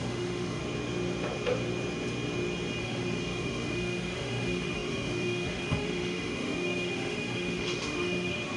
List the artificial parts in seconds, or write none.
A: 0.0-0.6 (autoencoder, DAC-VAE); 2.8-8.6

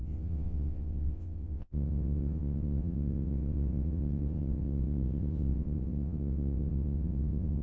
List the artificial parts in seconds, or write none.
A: 0.0-7.6 (vocoder, WaveNeXt)

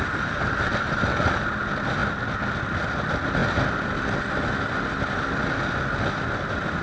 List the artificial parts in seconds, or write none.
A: none

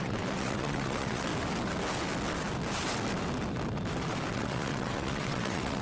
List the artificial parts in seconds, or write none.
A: 0.0-1.3 (vocoder, WaveNeXt); 4.3-5.8

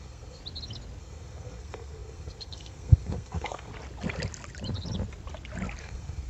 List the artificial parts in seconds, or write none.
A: 0.0-0.4 (codec, SNAC); 1.0-3.7; 5.8-6.3